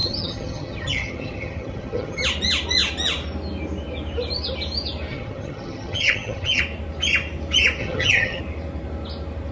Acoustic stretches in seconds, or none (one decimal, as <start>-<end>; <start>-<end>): 2.2-5.1; 6.6-7.8; 8.4-9.5